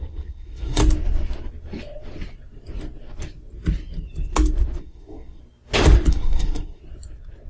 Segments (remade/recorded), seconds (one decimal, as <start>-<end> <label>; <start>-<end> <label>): 0.0-0.8 remade; 0.8-4.8 recorded; 4.8-5.4 remade; 5.4-6.1 recorded; 6.1-6.8 remade; 6.8-7.5 recorded